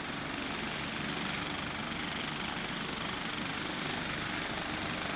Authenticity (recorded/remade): recorded